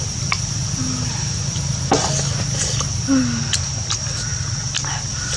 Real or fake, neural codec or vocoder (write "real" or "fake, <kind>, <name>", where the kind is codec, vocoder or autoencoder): real